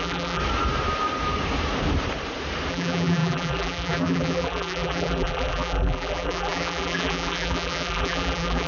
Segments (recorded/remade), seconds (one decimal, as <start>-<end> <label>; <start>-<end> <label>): 0.0-0.4 remade; 0.4-2.7 recorded; 2.7-8.7 remade